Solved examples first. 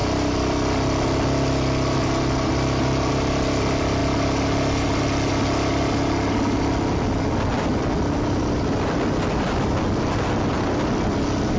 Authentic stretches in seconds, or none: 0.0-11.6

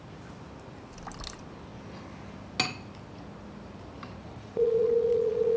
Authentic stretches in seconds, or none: 0.0-4.2

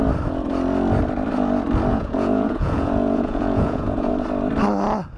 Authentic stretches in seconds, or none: 0.0-1.9; 4.1-5.2